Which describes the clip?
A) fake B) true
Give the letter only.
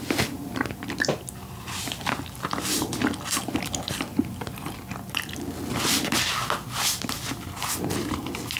B